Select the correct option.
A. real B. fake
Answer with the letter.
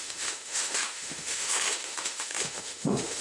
B